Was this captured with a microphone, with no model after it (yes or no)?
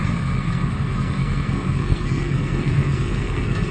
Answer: no